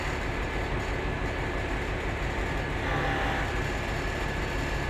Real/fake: real